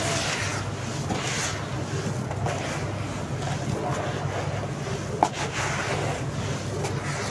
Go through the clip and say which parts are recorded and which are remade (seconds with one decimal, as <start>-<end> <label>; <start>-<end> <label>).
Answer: 0.0-7.3 recorded